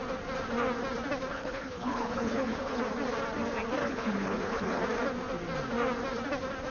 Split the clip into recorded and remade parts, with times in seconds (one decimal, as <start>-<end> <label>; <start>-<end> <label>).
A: 0.0-1.3 recorded; 1.3-2.8 remade; 2.8-3.8 recorded; 3.8-4.8 remade; 4.8-6.7 recorded